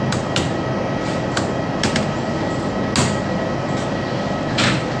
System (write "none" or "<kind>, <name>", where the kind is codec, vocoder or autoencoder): none